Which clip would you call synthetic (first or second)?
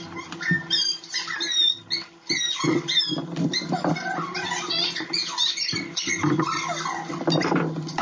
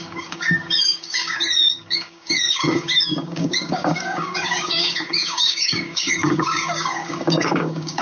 second